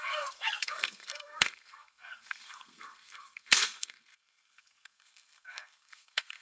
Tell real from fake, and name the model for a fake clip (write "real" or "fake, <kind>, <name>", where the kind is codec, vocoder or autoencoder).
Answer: fake, codec, SNAC